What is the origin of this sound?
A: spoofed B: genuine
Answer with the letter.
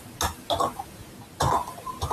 B